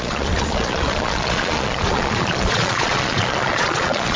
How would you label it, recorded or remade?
remade